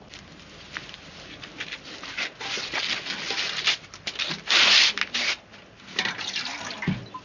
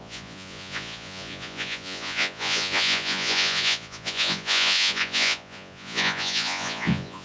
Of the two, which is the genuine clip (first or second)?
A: first